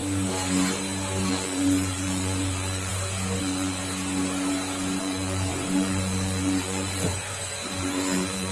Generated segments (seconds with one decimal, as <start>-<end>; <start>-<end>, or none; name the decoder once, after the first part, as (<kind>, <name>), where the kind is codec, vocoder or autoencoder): 1.3-2.9 (vocoder, Vocos); 3.4-3.8; 5.0-8.5